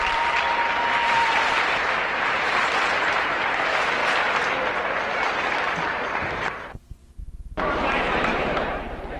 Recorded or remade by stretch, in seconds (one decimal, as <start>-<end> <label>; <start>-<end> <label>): 0.0-4.0 remade; 4.0-5.3 recorded; 5.3-9.2 remade